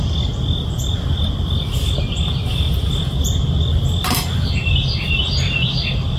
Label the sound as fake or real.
real